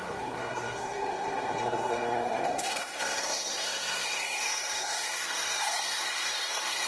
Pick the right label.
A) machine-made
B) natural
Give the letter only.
A